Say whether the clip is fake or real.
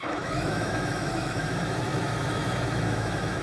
fake